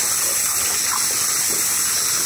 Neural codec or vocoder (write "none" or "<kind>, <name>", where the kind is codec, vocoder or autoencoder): none